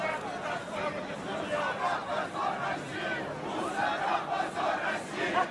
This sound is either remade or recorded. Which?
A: recorded